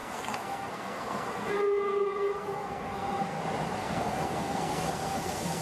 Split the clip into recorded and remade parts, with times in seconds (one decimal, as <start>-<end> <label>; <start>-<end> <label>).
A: 0.0-3.4 remade; 3.4-3.8 recorded; 3.8-5.6 remade

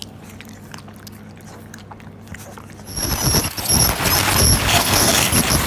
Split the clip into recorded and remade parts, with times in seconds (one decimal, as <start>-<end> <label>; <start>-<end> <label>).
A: 0.0-4.8 recorded; 4.8-5.3 remade; 5.3-5.7 recorded

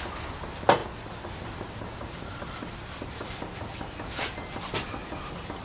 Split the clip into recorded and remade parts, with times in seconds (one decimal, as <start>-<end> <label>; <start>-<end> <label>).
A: 0.0-5.6 recorded

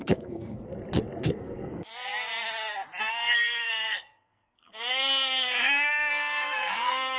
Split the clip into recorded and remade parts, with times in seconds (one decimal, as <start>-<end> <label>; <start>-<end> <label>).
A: 0.0-0.7 remade; 0.7-1.2 recorded; 1.2-1.9 remade; 1.9-3.0 recorded; 3.0-7.2 remade

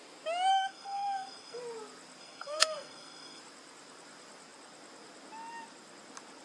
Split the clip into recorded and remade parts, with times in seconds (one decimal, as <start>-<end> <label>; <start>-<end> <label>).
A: 0.0-0.5 recorded; 0.5-1.6 remade; 1.6-2.2 recorded; 2.2-3.4 remade; 3.4-6.4 recorded

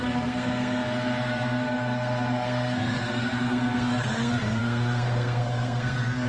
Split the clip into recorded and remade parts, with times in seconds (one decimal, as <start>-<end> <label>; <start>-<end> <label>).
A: 0.0-6.3 remade

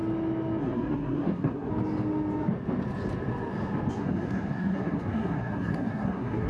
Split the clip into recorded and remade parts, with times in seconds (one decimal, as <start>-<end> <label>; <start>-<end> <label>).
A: 0.0-0.6 recorded; 0.6-1.7 remade; 1.7-3.9 recorded; 3.9-6.5 remade